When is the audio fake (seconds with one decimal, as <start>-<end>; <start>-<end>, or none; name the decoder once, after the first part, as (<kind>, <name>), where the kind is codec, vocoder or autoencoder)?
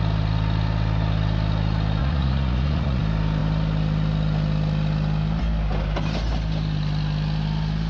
2.0-3.0 (vocoder, Vocos)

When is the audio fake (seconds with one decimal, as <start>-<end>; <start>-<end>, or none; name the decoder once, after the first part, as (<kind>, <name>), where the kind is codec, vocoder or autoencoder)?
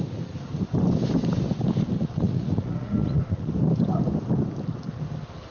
2.0-3.5 (vocoder, Vocos)